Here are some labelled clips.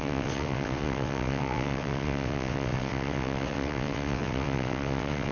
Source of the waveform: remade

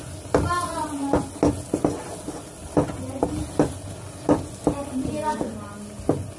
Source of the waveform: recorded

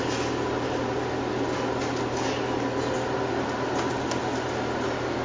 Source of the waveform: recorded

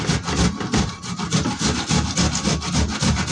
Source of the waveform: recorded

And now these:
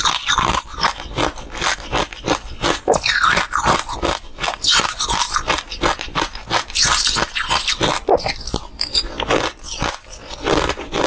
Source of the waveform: recorded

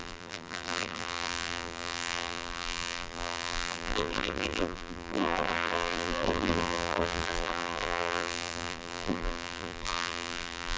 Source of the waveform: remade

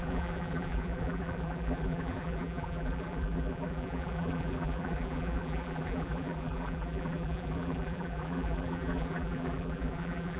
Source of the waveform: remade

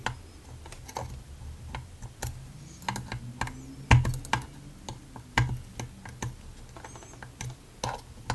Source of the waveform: recorded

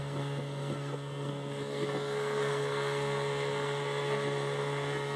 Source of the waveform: remade